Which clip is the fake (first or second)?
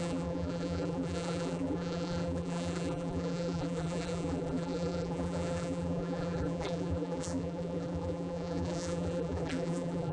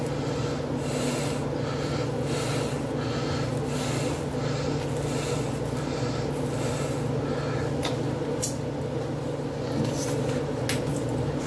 first